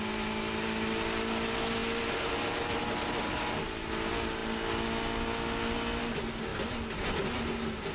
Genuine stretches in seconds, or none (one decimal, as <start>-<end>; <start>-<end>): 0.0-7.9